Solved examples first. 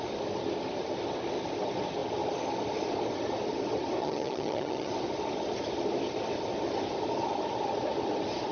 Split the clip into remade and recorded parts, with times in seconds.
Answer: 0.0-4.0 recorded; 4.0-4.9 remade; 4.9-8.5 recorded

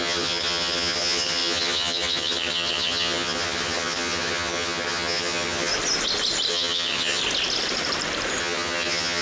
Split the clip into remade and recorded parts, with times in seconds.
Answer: 0.0-5.7 remade; 5.7-6.5 recorded; 6.5-7.2 remade; 7.2-8.4 recorded; 8.4-9.2 remade